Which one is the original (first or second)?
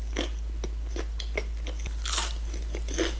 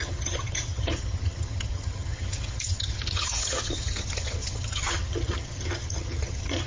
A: first